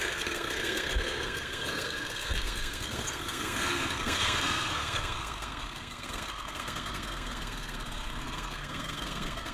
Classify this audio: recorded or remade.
remade